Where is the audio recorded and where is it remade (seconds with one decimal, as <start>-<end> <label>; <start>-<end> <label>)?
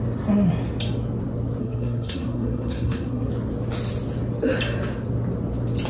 0.0-1.6 recorded; 1.6-3.3 remade; 3.3-5.9 recorded